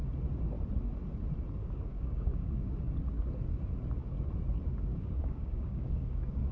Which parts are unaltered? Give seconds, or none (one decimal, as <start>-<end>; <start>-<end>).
0.0-1.6; 2.7-4.7